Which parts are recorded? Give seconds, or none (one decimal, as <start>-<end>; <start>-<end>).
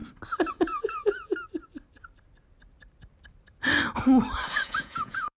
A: 0.0-0.5; 1.3-4.5